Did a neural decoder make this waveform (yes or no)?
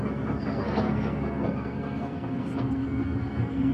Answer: yes